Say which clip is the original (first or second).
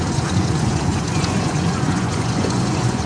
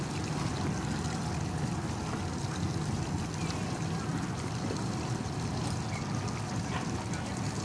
second